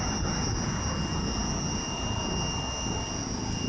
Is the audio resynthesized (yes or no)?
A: no